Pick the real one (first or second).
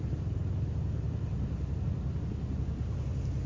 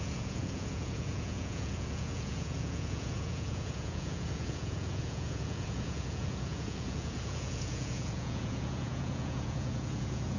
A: first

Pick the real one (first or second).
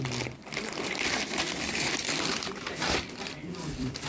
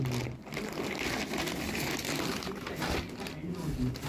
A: second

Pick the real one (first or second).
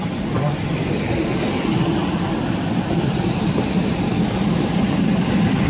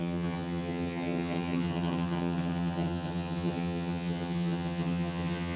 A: first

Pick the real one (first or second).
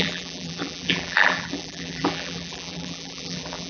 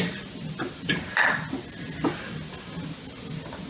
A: second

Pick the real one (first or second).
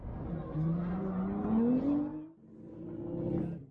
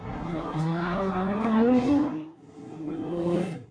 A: first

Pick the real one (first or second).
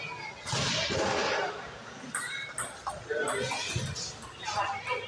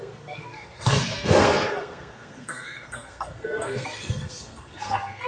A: first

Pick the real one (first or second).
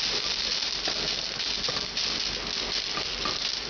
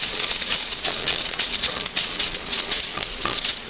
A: first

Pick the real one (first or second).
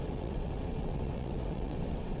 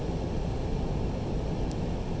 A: second